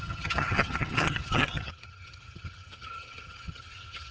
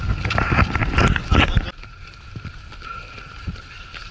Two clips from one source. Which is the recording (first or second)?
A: second